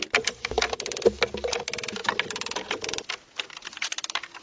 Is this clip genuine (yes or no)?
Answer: yes